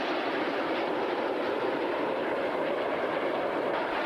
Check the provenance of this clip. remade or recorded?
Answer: recorded